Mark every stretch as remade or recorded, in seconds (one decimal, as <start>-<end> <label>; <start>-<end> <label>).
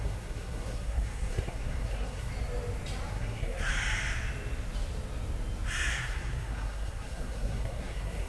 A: 0.0-2.3 remade; 2.3-3.1 recorded; 3.1-3.7 remade; 3.7-5.9 recorded; 5.9-8.3 remade